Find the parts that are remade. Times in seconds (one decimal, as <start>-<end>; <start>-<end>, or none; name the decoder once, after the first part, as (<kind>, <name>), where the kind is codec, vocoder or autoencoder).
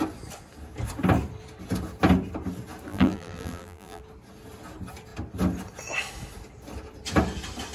2.9-4.0 (vocoder, BigVGAN v2)